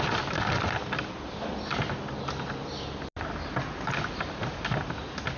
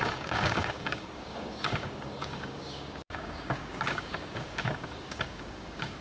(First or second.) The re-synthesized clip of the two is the second